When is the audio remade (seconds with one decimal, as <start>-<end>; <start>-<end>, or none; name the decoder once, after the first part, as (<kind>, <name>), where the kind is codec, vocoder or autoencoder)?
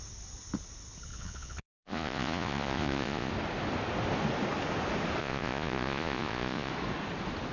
1.1-3.3 (vocoder, Vocos); 5.2-6.7